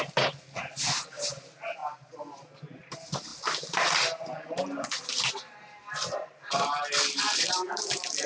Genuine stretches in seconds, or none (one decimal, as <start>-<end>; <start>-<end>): 0.0-8.3